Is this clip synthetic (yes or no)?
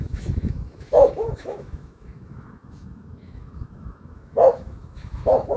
yes